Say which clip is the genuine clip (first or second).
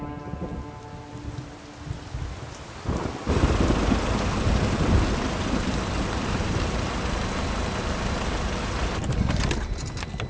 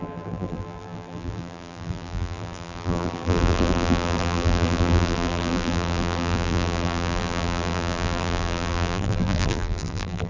first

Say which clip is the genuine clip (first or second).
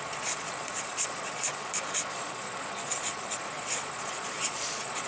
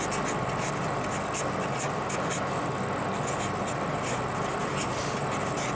second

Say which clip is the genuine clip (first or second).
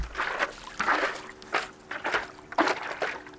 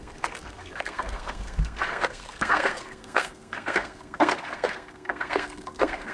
first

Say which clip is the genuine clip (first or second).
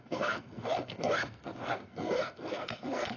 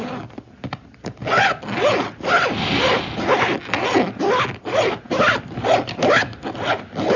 second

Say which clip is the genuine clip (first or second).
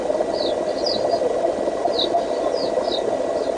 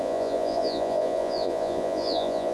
first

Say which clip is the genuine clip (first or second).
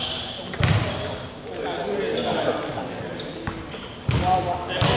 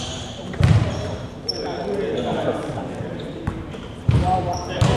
first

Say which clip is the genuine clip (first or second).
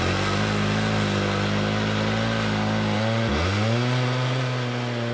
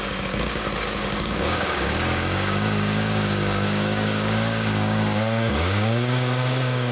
first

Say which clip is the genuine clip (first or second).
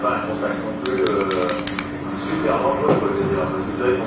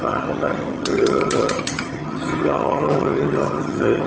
first